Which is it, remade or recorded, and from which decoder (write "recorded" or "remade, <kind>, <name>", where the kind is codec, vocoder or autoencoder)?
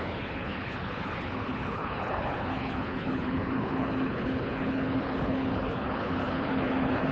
remade, codec, HILCodec